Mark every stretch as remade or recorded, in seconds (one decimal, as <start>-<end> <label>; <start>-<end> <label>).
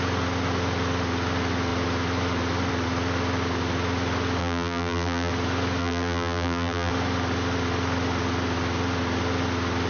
0.0-4.4 recorded; 4.4-5.3 remade; 5.3-5.8 recorded; 5.8-6.9 remade; 6.9-9.9 recorded